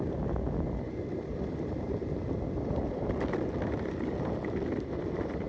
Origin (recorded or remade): recorded